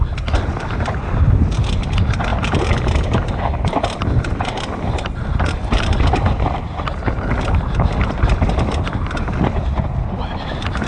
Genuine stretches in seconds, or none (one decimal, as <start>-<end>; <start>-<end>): 0.0-10.9